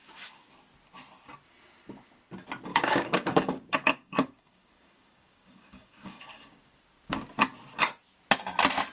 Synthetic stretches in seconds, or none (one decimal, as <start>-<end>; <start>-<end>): 0.0-0.5; 2.7-6.8

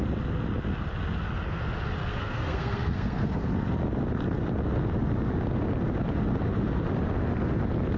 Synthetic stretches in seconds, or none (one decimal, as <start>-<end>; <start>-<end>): 2.0-3.4

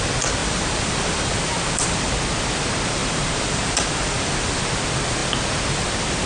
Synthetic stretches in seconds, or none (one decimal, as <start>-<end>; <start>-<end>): 0.4-2.1; 3.0-4.6

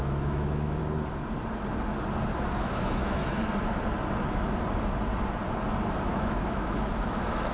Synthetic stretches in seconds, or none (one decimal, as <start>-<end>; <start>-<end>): 0.0-0.8; 2.6-3.2; 5.9-7.5

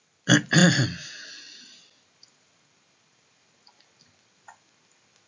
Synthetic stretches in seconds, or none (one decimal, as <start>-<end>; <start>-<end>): none

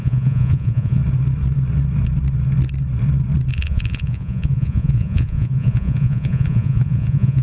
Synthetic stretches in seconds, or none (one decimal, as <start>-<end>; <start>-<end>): 0.0-1.0; 3.5-7.4